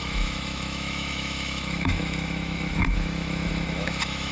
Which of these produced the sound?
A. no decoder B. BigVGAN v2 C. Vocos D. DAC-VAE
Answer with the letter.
D